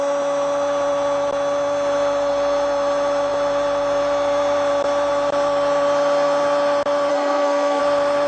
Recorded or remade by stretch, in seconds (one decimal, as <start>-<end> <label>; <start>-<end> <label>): 0.0-7.1 recorded; 7.1-7.8 remade; 7.8-8.3 recorded

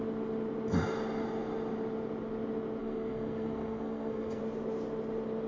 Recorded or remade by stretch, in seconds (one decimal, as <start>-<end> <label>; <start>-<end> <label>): 0.0-2.8 recorded; 2.8-4.4 remade; 4.4-5.5 recorded

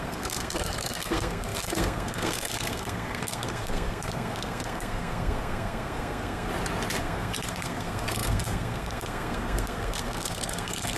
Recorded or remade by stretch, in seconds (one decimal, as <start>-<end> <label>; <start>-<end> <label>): 0.0-6.5 remade; 6.5-7.0 recorded; 7.0-11.0 remade

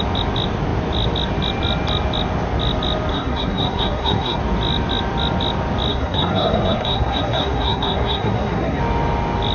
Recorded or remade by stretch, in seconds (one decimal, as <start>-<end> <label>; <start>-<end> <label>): 0.0-3.1 recorded; 3.1-4.4 remade; 4.4-5.9 recorded; 5.9-8.8 remade; 8.8-9.5 recorded

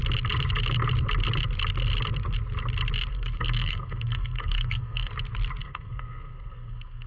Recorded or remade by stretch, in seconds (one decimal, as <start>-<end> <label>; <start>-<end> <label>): 0.0-3.1 recorded; 3.1-5.1 remade; 5.1-5.6 recorded; 5.6-7.1 remade

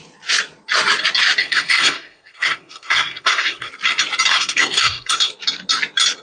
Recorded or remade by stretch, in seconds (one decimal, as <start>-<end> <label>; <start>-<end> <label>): 0.0-1.4 recorded; 1.4-3.7 remade; 3.7-4.3 recorded; 4.3-5.3 remade; 5.3-6.2 recorded

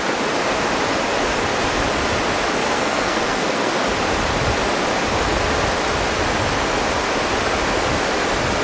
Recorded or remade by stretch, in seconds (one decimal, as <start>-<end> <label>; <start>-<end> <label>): 0.0-2.6 recorded; 2.6-3.7 remade; 3.7-8.6 recorded